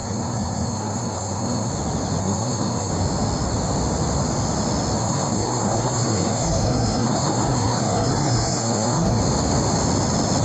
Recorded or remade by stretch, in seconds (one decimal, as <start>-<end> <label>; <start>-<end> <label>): 0.0-1.7 remade; 1.7-2.2 recorded; 2.2-2.9 remade; 2.9-5.0 recorded; 5.0-9.2 remade; 9.2-10.4 recorded